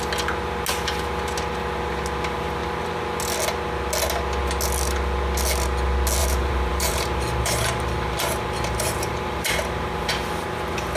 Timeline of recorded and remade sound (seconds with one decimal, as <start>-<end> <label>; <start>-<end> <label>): 0.0-6.2 recorded; 6.2-10.1 remade; 10.1-11.0 recorded